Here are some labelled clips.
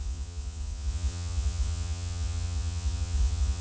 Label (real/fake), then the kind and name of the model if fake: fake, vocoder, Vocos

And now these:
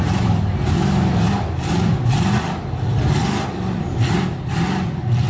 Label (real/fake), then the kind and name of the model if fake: real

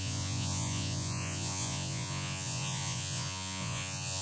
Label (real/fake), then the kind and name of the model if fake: fake, vocoder, Vocos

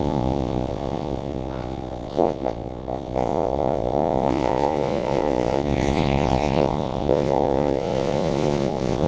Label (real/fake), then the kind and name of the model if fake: fake, vocoder, Vocos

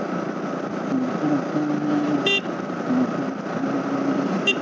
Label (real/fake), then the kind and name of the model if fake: real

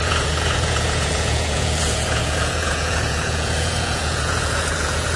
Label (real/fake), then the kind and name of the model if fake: fake, vocoder, Vocos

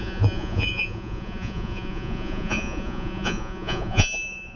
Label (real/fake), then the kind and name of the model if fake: fake, vocoder, Vocos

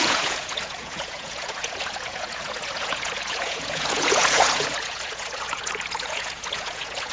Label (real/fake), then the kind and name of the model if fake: fake, vocoder, Vocos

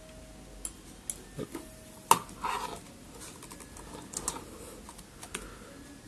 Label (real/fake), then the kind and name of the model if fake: real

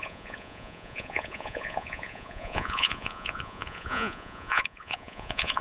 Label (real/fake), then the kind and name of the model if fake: fake, vocoder, Vocos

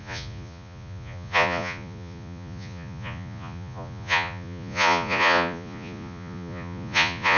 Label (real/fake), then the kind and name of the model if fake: fake, vocoder, Vocos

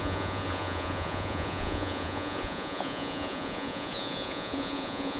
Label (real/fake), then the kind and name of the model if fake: fake, vocoder, Vocos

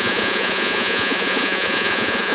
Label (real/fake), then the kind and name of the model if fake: fake, vocoder, Vocos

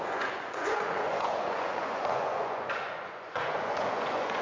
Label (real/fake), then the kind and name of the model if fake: fake, vocoder, Vocos